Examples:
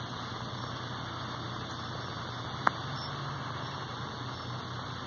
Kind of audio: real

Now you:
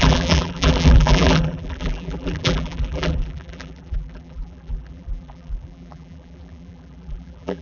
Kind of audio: fake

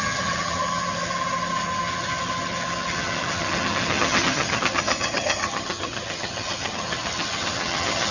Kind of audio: fake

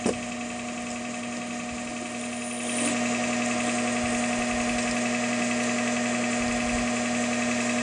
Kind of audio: real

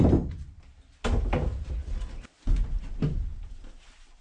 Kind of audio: real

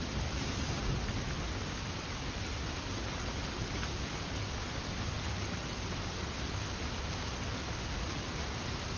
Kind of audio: real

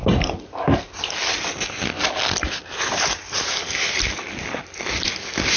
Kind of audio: real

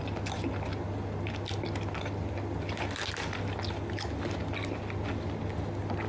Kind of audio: real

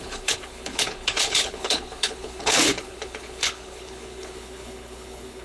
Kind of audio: fake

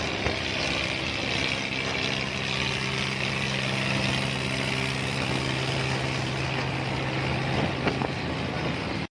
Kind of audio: real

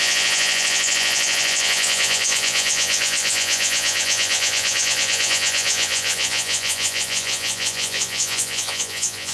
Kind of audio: fake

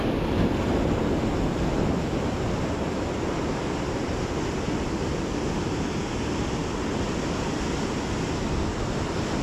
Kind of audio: real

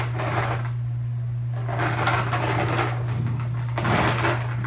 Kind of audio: real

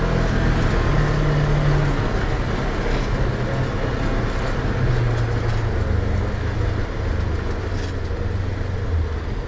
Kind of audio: real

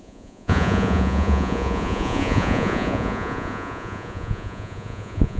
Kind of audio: fake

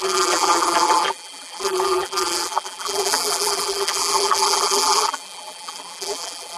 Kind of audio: fake